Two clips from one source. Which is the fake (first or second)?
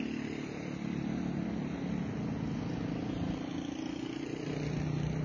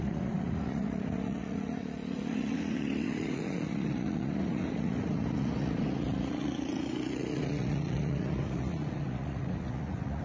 second